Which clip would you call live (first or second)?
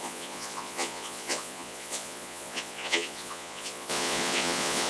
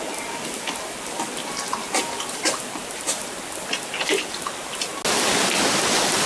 second